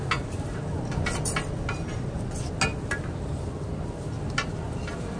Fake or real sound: real